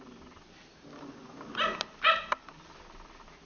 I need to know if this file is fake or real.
real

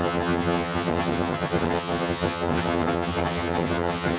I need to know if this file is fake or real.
fake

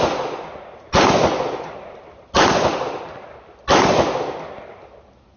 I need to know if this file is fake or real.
real